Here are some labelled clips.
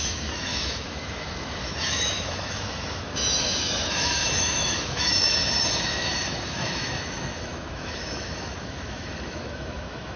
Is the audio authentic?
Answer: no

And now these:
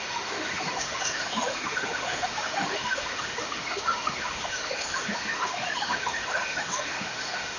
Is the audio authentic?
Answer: no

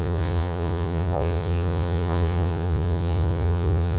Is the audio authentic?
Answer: no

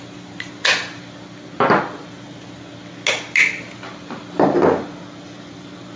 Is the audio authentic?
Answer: yes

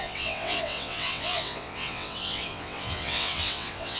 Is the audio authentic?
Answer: no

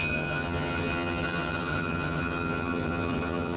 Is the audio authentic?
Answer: no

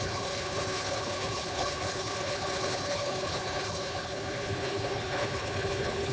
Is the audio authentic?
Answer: no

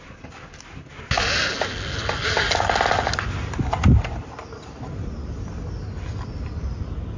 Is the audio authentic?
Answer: yes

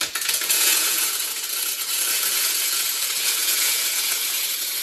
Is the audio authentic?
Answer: no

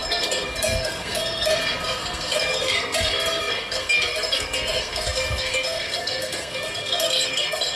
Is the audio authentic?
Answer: no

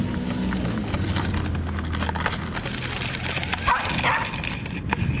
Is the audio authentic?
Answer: yes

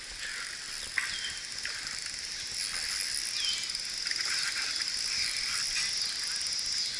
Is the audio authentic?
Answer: yes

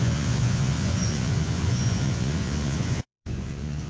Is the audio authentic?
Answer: no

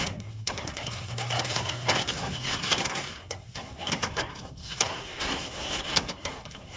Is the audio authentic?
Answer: no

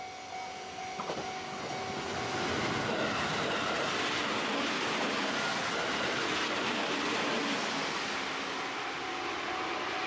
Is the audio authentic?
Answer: yes